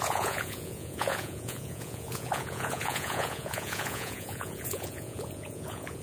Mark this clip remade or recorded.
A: remade